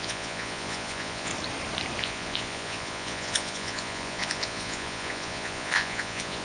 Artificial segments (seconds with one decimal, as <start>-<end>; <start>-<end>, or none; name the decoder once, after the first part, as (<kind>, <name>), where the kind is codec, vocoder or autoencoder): 0.0-1.3 (vocoder, Vocos); 2.0-6.4